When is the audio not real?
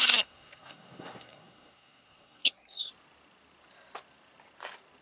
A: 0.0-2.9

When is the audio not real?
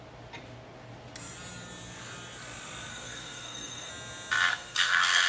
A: 2.9-3.9; 4.5-5.3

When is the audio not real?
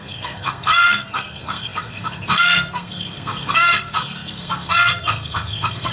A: 0.0-5.9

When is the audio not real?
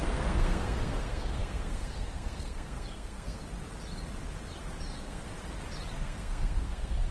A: 0.0-3.4; 4.8-5.2; 6.0-7.1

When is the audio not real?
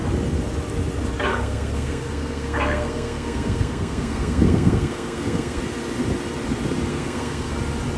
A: 1.3-5.6; 6.9-7.6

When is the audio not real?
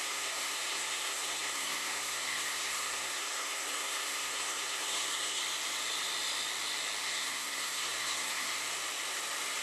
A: 0.0-5.4; 7.0-8.5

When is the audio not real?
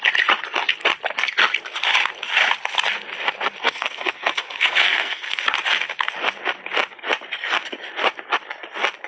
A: 3.6-5.4